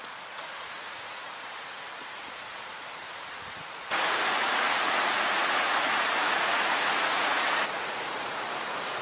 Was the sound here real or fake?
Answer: fake